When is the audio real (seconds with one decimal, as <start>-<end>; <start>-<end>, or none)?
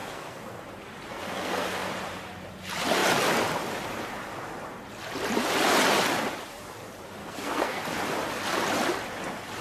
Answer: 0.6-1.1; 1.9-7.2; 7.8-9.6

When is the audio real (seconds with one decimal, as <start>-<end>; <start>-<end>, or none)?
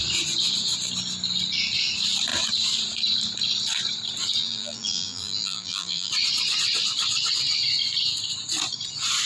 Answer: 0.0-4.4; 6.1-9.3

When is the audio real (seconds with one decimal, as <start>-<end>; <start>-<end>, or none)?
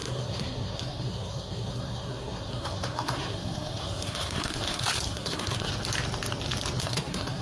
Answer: 5.7-6.8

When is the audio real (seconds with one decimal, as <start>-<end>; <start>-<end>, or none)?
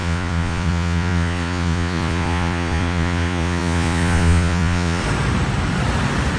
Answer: 5.0-6.4